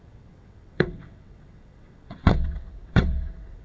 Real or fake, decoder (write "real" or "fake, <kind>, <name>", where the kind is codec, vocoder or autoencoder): fake, vocoder, WaveNeXt